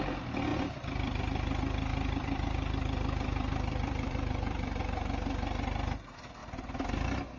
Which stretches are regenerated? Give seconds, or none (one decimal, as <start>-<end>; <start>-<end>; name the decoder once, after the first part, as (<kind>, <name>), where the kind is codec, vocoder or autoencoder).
0.5-1.2 (vocoder, BigVGAN v2); 1.9-4.8